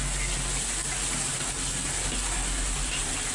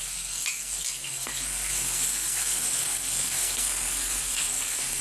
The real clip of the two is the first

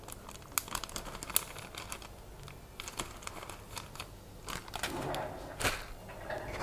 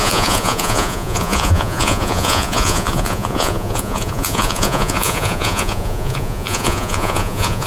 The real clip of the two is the first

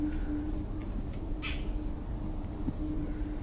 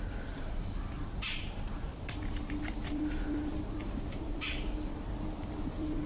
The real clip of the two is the first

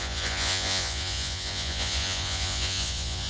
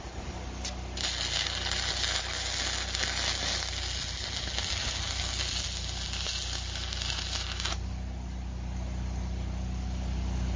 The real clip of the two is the second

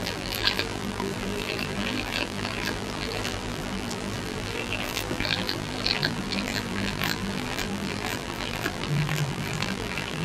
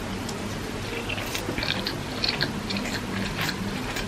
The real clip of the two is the second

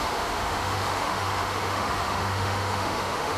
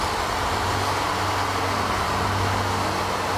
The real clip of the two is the second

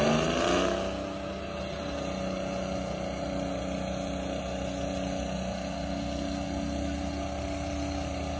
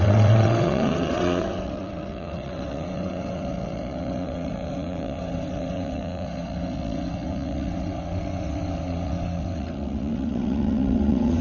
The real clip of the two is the first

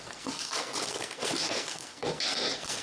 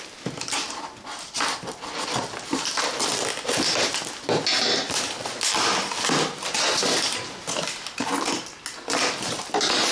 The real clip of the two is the second